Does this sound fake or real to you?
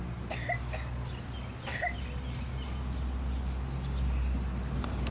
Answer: real